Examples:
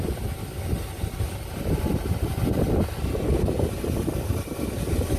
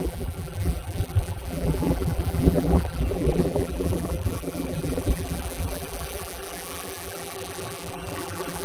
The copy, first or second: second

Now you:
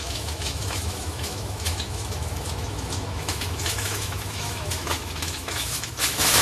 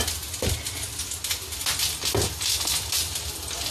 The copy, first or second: first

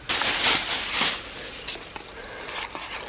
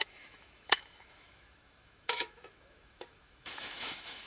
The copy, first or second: second